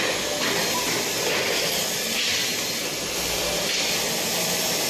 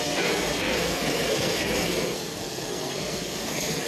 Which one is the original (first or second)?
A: first